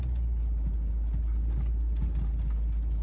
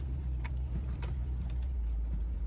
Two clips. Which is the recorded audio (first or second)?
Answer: first